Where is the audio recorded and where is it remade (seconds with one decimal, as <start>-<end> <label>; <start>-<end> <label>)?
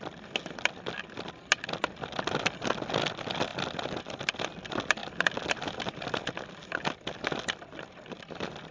0.0-8.7 remade